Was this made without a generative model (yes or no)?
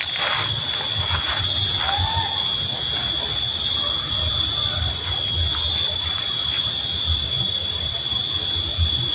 yes